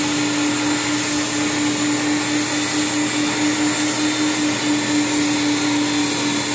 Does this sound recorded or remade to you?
recorded